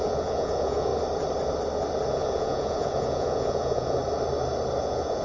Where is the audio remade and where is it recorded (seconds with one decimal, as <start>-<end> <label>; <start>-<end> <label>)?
0.0-0.9 remade; 0.9-2.1 recorded; 2.1-4.0 remade; 4.0-4.8 recorded; 4.8-5.2 remade